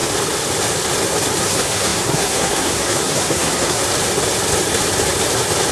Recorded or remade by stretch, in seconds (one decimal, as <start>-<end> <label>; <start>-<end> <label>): 0.0-1.4 recorded; 1.4-3.8 remade; 3.8-5.7 recorded

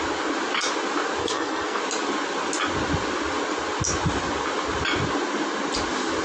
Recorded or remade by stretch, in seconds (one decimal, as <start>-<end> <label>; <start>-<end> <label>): 0.0-1.2 recorded; 1.2-1.8 remade; 1.8-6.2 recorded